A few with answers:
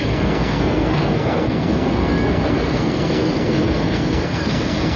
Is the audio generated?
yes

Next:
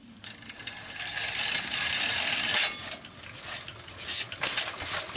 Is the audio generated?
no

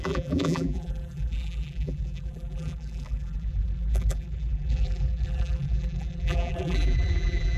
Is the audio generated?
yes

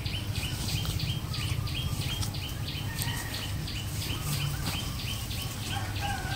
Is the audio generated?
no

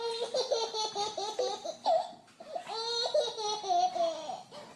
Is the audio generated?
no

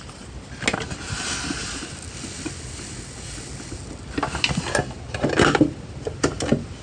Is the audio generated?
no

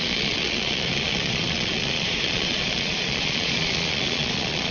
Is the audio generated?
yes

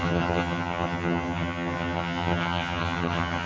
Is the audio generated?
yes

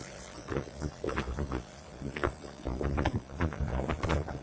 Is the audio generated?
yes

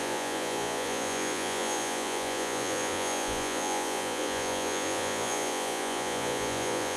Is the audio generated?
yes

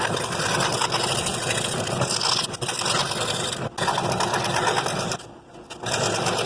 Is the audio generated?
no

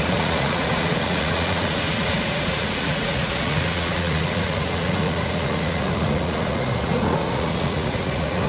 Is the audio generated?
yes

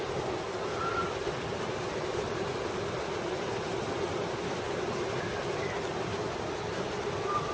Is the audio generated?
no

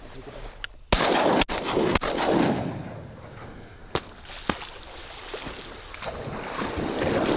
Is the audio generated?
no